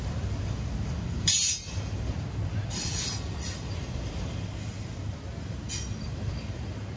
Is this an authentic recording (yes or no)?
yes